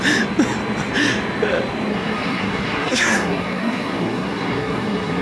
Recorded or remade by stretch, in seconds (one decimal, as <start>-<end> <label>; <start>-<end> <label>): 0.0-1.9 recorded; 1.9-5.2 remade